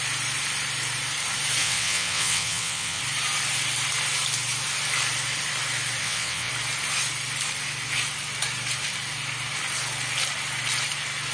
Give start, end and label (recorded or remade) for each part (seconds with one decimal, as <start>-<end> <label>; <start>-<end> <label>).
0.0-1.6 recorded; 1.6-3.0 remade; 3.0-6.0 recorded; 6.0-6.5 remade; 6.5-11.3 recorded